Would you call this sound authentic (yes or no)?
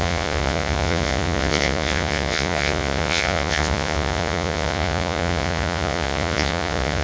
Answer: no